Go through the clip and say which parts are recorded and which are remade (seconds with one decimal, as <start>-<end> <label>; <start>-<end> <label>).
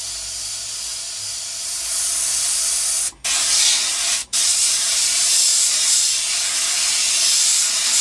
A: 0.0-3.9 recorded; 3.9-4.9 remade; 4.9-5.5 recorded; 5.5-6.2 remade; 6.2-8.0 recorded